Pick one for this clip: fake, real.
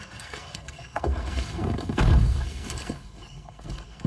fake